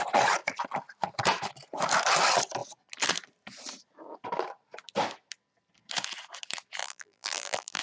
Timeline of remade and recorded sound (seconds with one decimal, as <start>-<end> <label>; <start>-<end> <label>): 0.0-6.8 recorded; 6.8-7.8 remade